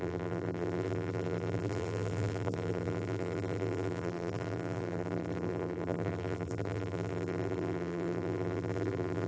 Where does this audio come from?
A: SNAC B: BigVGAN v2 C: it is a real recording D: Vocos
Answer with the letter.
B